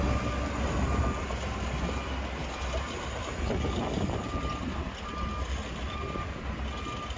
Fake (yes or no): no